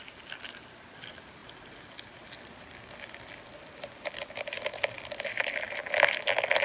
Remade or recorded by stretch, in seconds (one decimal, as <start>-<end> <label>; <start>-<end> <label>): 0.0-6.6 recorded